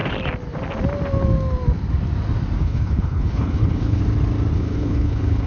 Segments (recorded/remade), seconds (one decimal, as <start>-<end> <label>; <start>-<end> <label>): 0.0-2.6 recorded; 2.6-4.0 remade; 4.0-4.5 recorded; 4.5-5.5 remade

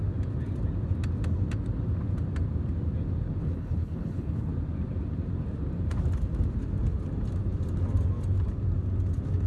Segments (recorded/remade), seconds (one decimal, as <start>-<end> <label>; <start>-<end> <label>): 0.0-3.4 recorded; 3.4-4.5 remade; 4.5-9.5 recorded

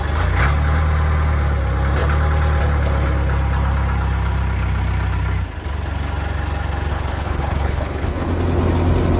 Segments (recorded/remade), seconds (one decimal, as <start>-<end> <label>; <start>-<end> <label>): 0.0-6.9 recorded; 6.9-8.3 remade; 8.3-9.2 recorded